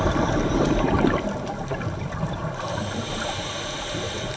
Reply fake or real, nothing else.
fake